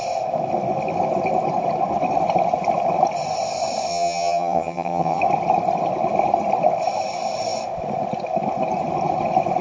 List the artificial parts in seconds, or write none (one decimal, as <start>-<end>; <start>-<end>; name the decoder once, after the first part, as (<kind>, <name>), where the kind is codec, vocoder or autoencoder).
3.9-5.2 (vocoder, HiFi-GAN)

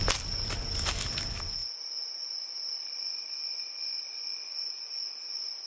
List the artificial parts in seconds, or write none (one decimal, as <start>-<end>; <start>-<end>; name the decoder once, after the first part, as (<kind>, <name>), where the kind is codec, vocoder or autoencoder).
none

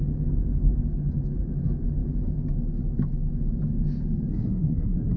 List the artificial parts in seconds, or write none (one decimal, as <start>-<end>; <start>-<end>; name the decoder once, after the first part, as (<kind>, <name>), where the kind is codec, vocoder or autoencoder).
4.3-5.2 (codec, SNAC)

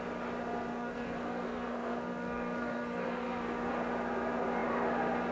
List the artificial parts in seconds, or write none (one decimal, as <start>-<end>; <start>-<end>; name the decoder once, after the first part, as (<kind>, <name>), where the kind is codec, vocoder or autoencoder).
0.7-3.7 (codec, SNAC)